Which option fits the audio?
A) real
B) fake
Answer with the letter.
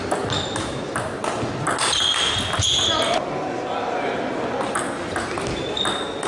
A